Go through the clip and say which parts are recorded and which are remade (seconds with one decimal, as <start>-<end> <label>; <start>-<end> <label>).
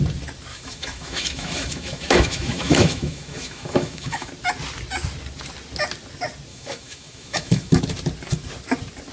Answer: 0.0-0.5 recorded; 0.5-4.3 remade; 4.3-6.5 recorded; 6.5-7.8 remade; 7.8-9.1 recorded